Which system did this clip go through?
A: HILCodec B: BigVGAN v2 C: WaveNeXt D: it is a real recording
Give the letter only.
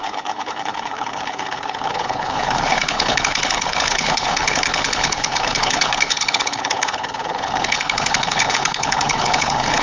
A